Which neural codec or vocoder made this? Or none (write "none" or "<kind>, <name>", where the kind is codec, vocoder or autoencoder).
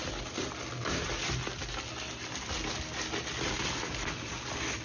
none